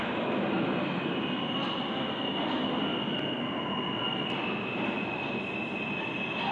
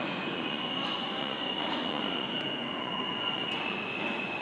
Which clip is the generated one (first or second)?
second